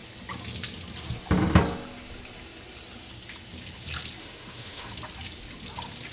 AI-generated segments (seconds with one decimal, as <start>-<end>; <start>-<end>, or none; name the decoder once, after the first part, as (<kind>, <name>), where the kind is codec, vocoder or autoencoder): 4.2-4.9 (autoencoder, DAC-VAE)